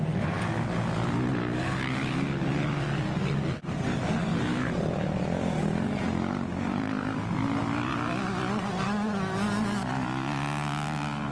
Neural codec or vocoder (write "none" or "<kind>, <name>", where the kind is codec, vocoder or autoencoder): none